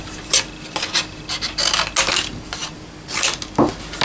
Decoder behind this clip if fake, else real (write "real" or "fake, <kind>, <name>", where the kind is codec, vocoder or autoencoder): real